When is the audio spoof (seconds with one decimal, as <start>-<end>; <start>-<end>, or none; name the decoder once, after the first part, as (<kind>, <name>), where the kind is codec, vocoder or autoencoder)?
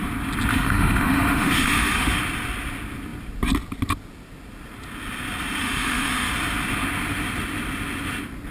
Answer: 0.5-2.2 (autoencoder, DAC-VAE); 5.6-6.3